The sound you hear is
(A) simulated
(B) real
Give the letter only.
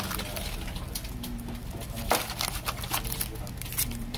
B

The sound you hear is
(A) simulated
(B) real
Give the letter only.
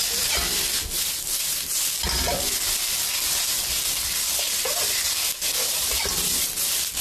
B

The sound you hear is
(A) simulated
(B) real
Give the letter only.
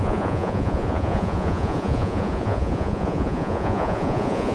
A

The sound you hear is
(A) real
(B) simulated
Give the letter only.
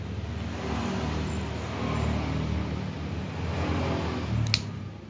A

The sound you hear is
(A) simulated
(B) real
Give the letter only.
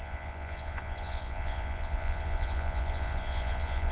A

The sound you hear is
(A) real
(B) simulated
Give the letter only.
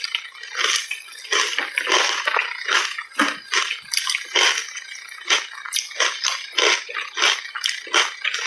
A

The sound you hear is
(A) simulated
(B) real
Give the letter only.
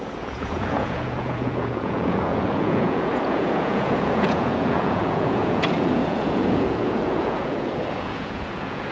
A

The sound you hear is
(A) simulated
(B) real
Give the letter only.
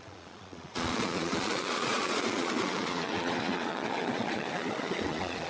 A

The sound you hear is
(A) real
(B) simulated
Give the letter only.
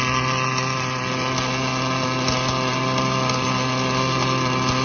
A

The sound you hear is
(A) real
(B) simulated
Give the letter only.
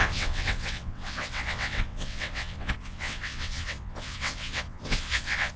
B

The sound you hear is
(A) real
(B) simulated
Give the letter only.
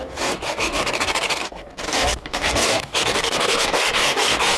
B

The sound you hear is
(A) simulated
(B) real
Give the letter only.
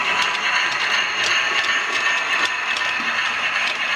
B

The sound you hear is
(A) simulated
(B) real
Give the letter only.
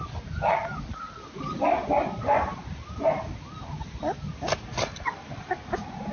B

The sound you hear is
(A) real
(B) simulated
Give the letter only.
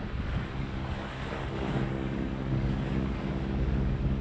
B